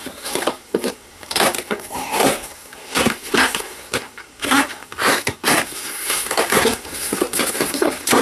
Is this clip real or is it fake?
fake